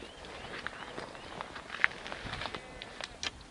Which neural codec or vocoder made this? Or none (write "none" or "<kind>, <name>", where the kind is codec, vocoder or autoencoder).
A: none